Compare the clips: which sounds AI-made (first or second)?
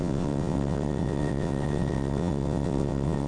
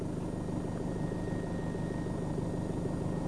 first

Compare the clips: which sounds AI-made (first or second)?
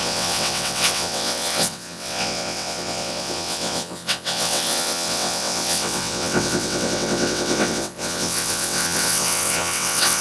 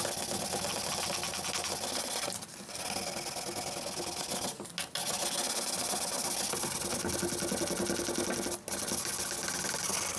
first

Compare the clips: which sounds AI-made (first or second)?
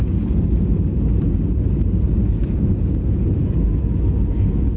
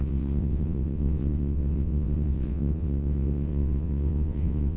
second